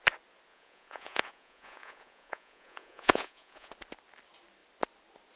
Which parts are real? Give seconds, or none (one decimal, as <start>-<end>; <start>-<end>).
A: 0.0-0.5; 3.7-5.3